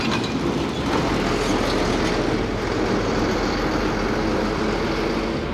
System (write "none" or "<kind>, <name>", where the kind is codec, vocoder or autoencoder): none